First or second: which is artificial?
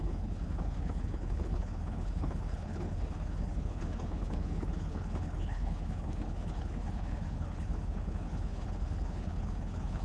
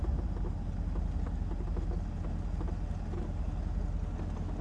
first